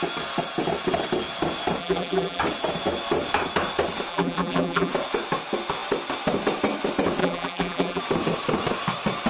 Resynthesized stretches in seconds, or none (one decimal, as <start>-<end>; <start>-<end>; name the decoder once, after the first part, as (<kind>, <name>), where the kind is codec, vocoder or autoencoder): 1.8-2.4 (vocoder, BigVGAN v2); 4.1-4.9; 7.2-8.0